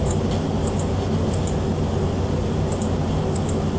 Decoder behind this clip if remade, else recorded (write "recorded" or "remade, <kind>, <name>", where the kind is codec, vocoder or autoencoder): recorded